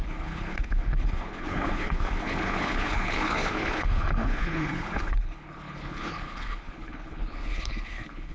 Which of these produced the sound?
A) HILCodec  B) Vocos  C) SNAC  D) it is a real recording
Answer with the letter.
A